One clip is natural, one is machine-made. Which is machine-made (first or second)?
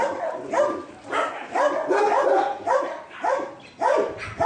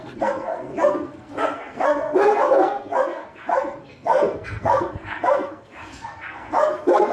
second